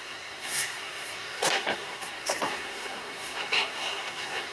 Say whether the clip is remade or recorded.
remade